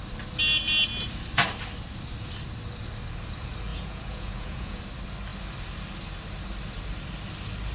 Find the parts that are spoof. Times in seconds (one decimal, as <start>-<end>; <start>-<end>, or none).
3.7-4.8